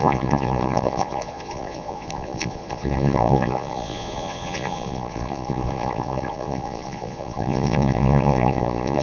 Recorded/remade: remade